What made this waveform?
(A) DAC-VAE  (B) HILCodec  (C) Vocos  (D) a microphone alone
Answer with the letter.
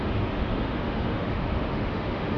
A